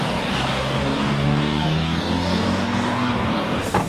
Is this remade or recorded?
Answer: remade